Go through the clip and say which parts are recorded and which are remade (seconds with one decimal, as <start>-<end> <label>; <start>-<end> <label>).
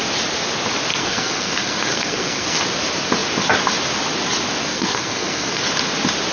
0.0-0.9 recorded; 0.9-2.6 remade; 2.6-4.6 recorded; 4.6-5.6 remade; 5.6-6.3 recorded